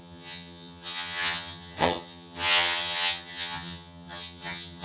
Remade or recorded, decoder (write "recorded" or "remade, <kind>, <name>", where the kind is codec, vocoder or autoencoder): remade, vocoder, HiFi-GAN